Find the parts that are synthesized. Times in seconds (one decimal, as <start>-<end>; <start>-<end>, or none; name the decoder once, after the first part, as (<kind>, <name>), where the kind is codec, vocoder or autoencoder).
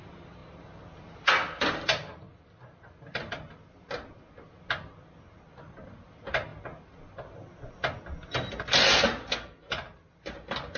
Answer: none